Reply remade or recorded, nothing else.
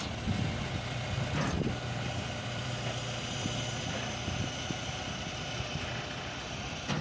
remade